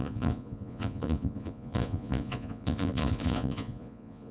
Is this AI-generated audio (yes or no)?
yes